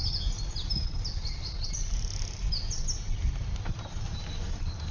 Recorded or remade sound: recorded